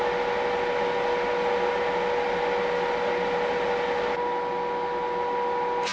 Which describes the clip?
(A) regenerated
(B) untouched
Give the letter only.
B